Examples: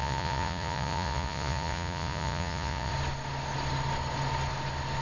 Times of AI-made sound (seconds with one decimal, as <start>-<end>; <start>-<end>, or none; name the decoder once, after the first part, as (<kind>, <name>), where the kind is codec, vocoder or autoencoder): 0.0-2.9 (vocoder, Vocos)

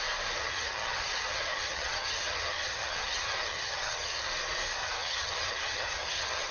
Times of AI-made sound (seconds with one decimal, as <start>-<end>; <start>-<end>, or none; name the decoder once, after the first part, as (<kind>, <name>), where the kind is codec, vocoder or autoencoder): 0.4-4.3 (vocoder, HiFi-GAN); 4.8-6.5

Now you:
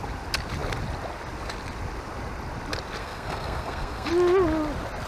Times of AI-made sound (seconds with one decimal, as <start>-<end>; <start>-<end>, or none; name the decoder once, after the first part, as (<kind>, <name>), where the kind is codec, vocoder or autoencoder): 3.0-4.1 (codec, SNAC)